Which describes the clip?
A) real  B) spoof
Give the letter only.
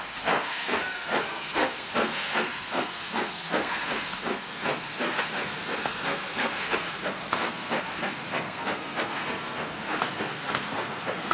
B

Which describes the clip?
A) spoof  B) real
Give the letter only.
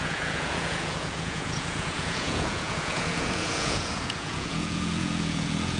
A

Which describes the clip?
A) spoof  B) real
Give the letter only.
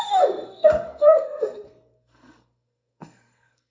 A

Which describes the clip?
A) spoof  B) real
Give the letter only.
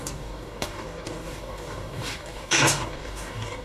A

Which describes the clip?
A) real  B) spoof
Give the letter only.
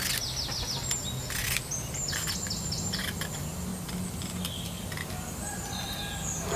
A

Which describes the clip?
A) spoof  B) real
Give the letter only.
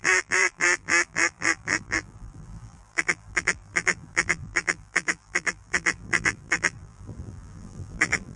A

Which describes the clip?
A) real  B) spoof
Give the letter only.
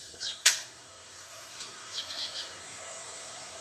B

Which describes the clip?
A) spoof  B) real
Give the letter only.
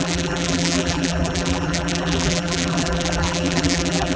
A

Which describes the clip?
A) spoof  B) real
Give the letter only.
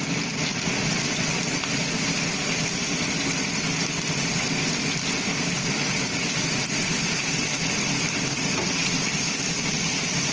B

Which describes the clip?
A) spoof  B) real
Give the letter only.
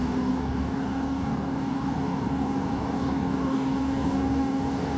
A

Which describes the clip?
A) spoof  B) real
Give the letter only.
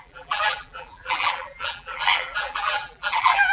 A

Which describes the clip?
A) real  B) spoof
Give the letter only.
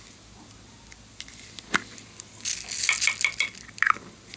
A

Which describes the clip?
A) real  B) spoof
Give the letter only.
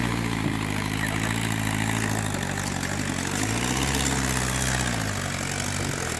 A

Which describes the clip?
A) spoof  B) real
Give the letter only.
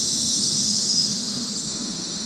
A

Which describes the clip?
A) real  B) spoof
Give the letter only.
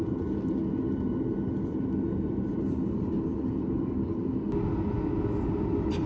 A